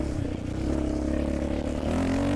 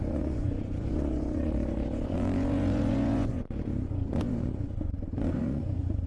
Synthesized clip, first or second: second